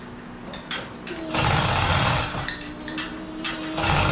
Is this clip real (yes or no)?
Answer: yes